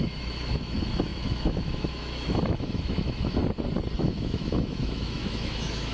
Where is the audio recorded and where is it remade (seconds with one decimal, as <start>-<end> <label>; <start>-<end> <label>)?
0.0-3.4 remade; 3.4-4.0 recorded; 4.0-5.9 remade